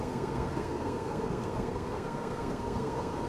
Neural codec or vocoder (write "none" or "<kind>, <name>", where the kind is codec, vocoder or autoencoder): codec, SNAC